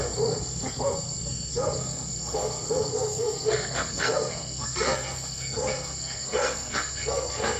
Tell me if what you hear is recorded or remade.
remade